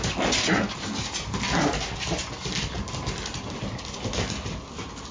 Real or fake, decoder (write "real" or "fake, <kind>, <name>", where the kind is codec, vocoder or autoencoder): real